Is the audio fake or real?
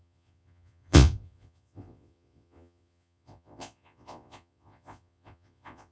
fake